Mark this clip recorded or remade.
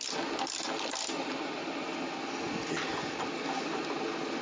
recorded